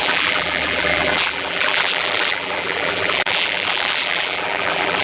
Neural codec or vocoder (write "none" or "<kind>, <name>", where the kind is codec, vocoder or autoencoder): vocoder, BigVGAN v2